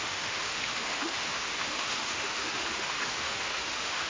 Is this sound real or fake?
fake